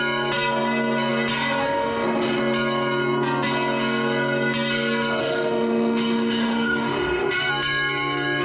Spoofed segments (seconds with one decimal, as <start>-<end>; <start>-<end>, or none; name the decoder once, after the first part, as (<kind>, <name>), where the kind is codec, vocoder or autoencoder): 1.6-2.4 (autoencoder, DAC-VAE); 5.2-7.5